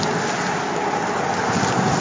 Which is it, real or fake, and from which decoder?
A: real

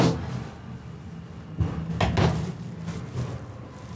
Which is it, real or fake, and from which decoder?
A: real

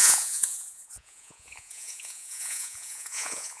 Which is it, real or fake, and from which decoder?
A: fake, vocoder, Vocos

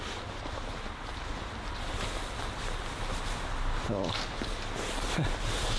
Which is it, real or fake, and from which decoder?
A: real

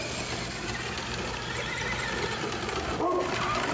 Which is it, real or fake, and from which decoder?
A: real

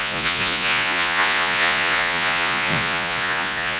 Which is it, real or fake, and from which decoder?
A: fake, vocoder, Vocos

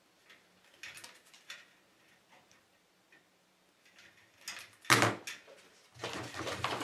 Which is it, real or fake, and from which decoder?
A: real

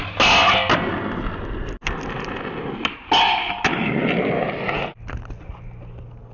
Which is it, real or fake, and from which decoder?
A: real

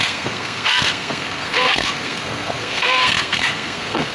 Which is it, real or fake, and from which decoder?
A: fake, codec, SNAC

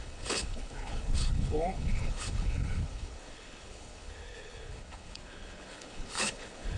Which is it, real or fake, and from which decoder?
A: fake, codec, HILCodec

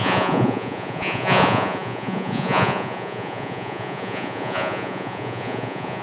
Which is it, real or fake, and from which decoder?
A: fake, vocoder, Vocos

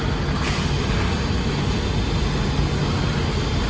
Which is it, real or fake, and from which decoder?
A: real